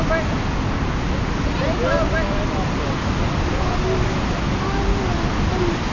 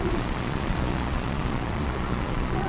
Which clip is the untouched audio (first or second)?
first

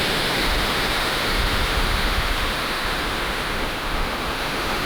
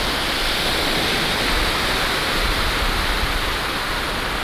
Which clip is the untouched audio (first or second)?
second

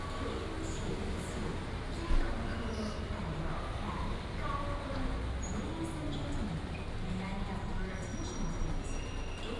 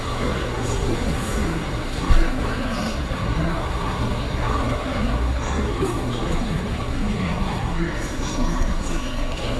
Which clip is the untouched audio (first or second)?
first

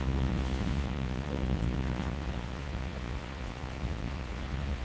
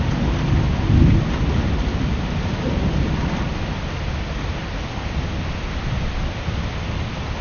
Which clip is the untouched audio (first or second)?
second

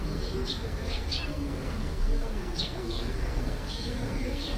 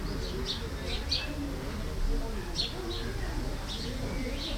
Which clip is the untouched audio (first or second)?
second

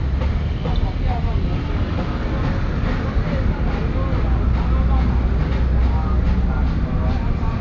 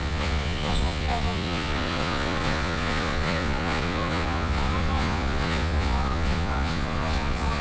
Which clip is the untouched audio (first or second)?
first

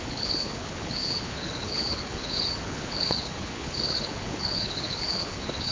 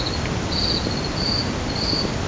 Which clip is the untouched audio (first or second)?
second